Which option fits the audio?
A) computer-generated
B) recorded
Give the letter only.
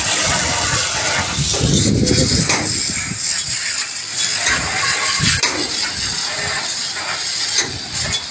B